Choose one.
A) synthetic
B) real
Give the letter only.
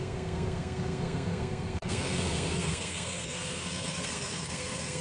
A